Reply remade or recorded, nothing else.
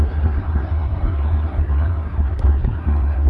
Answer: remade